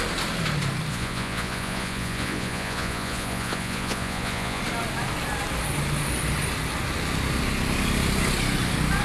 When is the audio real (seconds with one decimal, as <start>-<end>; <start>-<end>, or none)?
0.0-0.9; 4.6-9.0